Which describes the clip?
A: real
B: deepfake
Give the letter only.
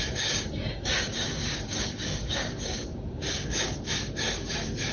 B